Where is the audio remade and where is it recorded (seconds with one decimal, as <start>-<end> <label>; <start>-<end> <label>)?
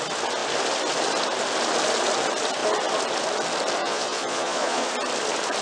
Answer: 0.0-3.8 recorded; 3.8-4.9 remade; 4.9-5.6 recorded